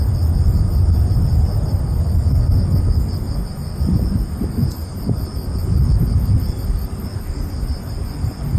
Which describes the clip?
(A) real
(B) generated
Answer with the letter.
A